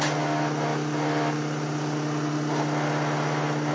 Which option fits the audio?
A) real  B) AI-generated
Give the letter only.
A